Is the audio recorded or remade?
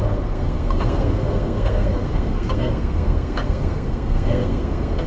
remade